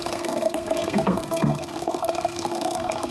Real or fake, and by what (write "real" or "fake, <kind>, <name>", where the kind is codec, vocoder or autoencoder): fake, codec, SNAC